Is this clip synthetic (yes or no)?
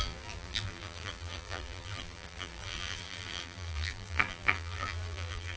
yes